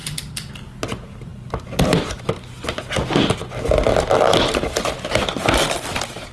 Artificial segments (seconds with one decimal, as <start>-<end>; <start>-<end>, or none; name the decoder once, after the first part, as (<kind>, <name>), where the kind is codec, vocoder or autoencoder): none